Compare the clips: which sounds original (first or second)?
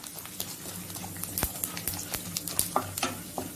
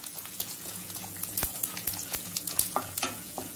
first